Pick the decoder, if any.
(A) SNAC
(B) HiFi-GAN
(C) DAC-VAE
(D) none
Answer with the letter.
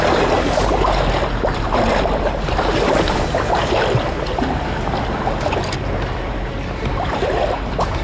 D